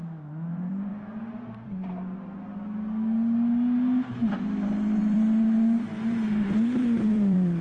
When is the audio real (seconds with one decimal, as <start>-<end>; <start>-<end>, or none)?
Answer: 0.9-4.2